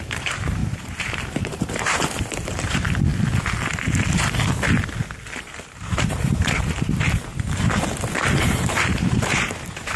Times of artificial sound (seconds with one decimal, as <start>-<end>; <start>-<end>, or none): 0.0-3.1; 5.7-7.3; 8.4-10.0